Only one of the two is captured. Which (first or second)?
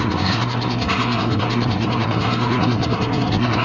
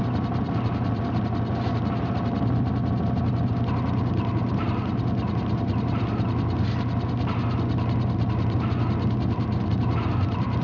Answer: second